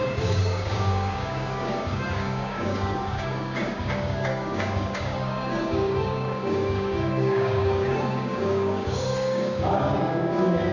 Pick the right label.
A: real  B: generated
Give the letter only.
B